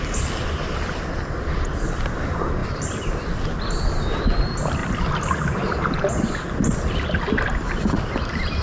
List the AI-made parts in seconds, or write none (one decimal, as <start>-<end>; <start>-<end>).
none